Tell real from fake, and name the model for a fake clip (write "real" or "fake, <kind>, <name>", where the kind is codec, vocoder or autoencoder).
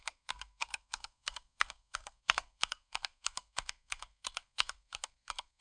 fake, codec, SNAC